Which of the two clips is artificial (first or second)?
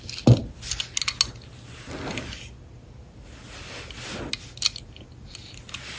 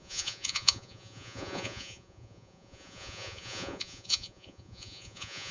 second